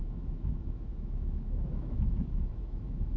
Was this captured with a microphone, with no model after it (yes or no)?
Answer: no